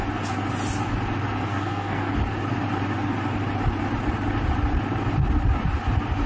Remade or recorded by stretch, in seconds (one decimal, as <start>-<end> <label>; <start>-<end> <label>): 0.0-1.5 recorded; 1.5-2.1 remade; 2.1-6.3 recorded